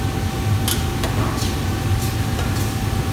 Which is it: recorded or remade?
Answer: recorded